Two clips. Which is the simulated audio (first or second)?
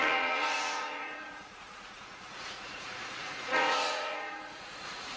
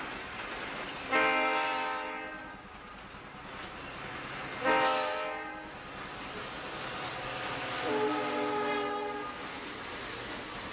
first